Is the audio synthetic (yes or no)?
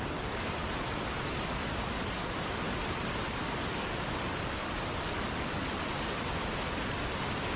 no